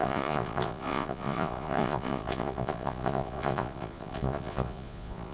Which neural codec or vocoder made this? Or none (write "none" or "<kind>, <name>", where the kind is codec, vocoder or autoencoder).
vocoder, Vocos